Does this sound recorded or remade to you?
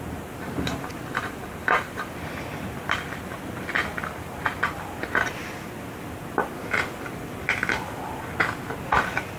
recorded